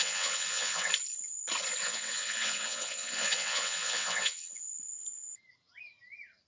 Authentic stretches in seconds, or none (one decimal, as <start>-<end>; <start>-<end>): 0.9-1.8; 4.6-6.5